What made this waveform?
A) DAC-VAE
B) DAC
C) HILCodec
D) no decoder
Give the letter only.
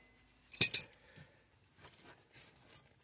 D